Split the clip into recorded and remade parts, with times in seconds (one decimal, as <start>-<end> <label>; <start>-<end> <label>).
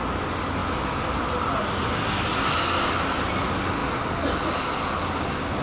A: 0.0-5.6 recorded